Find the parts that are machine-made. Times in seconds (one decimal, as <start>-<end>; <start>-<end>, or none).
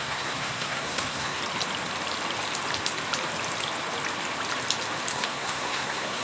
0.0-1.4; 5.1-6.2